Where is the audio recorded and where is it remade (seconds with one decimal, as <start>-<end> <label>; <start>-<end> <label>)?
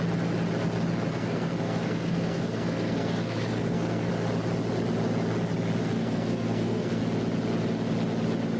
0.0-1.1 recorded; 1.1-4.1 remade; 4.1-5.8 recorded; 5.8-7.0 remade; 7.0-8.6 recorded